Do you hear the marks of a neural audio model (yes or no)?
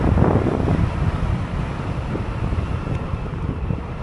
yes